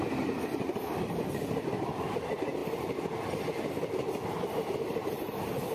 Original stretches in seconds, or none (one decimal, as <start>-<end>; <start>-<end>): 2.6-3.7